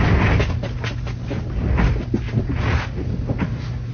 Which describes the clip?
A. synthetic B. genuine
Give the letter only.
B